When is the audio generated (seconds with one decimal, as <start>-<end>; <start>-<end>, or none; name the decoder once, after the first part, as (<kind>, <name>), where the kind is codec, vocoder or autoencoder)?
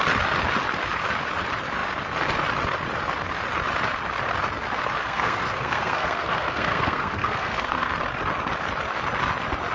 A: 5.0-7.9 (codec, SNAC)